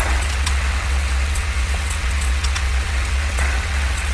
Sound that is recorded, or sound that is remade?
remade